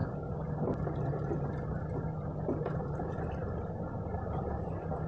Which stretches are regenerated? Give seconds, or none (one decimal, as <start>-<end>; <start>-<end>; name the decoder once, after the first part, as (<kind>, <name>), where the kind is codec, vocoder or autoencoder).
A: none